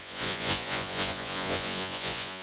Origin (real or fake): fake